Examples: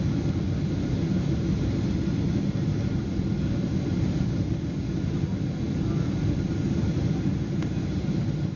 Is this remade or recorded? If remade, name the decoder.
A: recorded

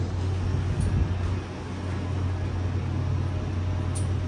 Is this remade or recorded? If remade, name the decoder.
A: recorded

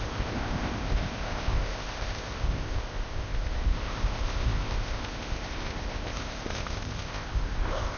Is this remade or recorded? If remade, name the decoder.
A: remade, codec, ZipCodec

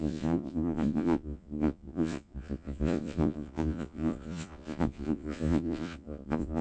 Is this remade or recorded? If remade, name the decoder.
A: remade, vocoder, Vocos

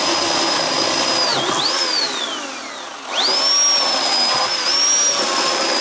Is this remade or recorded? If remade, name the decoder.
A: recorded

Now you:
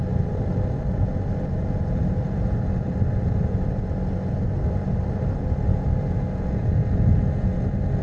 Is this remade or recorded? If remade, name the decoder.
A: recorded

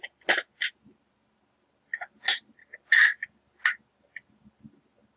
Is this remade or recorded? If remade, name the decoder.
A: recorded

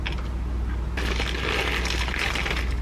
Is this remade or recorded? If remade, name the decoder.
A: recorded